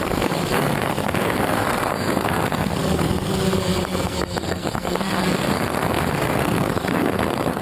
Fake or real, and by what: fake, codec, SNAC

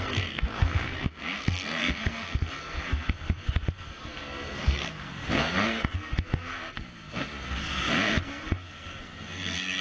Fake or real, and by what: fake, codec, SNAC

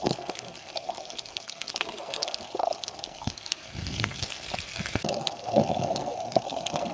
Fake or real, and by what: fake, codec, SNAC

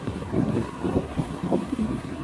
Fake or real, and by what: fake, codec, SNAC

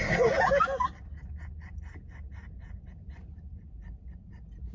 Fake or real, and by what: real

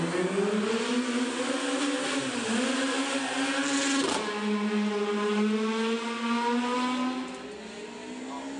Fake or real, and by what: real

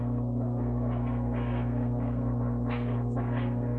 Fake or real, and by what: fake, codec, SNAC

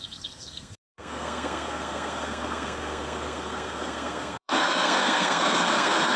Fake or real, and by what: fake, codec, SNAC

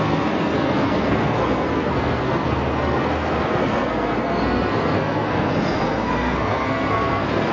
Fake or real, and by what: fake, codec, SNAC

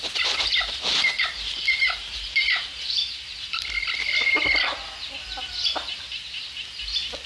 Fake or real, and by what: real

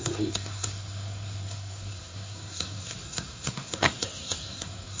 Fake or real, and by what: fake, codec, SNAC